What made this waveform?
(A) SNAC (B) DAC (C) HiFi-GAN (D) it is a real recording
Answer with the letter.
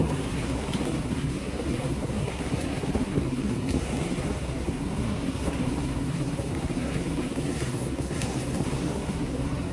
A